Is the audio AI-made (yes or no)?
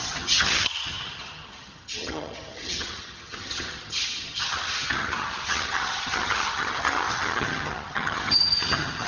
yes